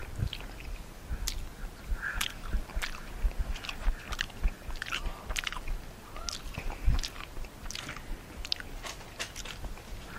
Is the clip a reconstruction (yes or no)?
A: no